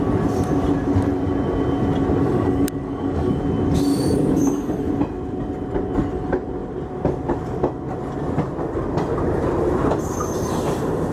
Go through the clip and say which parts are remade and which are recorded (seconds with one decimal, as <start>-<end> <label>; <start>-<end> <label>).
0.0-2.2 recorded; 2.2-3.4 remade; 3.4-3.9 recorded; 3.9-4.9 remade; 4.9-11.1 recorded